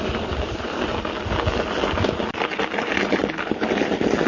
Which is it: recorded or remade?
recorded